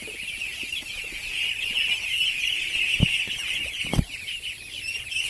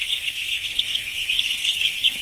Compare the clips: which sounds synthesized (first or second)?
second